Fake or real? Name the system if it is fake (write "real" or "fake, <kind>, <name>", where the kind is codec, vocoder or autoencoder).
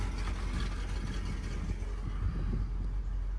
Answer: real